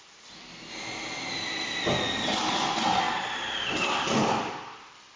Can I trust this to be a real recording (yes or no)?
yes